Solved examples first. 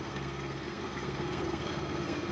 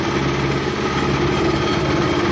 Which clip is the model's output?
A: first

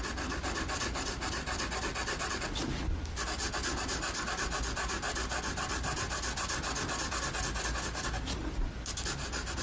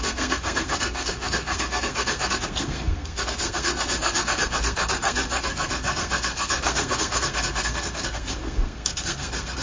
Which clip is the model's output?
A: second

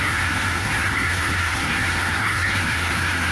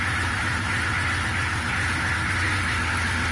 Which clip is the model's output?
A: first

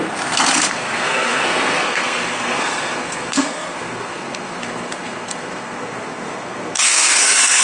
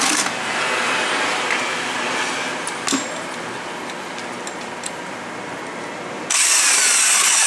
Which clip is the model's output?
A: first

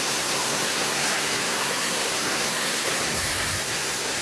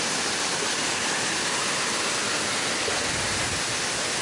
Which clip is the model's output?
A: first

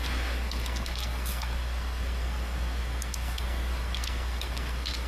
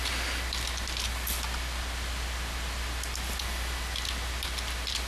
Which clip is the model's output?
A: first